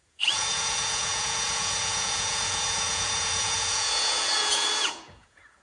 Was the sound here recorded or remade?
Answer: remade